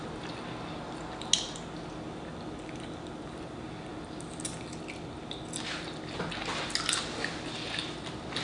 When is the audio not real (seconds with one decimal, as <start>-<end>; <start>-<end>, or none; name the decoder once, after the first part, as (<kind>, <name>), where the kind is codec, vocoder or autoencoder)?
none